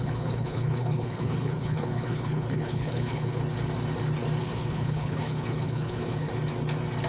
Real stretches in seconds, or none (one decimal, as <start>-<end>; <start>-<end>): 3.4-4.4; 6.3-7.1